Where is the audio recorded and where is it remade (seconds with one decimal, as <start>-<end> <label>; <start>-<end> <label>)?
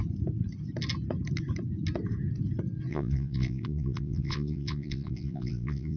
0.0-2.9 recorded; 2.9-6.0 remade